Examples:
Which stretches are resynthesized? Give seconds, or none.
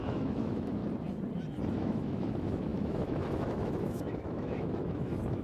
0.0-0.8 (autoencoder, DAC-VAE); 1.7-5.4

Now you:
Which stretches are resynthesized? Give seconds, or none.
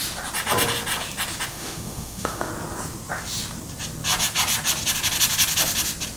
1.5-2.5 (autoencoder, DAC-VAE)